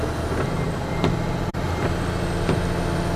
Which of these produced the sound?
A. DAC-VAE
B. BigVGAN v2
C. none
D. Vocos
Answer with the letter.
C